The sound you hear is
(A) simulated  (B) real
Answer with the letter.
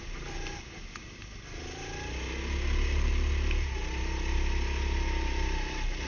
B